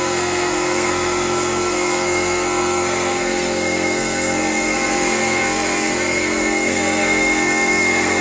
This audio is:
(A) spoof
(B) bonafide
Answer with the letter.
A